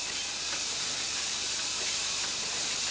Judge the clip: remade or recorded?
remade